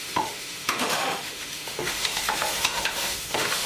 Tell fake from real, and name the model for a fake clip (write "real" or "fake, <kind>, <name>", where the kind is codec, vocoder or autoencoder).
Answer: fake, autoencoder, DAC-VAE